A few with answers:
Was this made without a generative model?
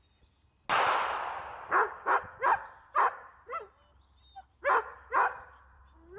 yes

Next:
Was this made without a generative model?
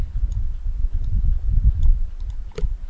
yes